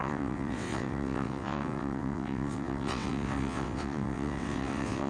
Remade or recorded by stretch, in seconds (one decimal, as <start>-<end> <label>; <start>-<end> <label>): 0.0-5.1 remade